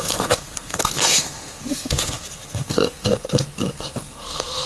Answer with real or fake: fake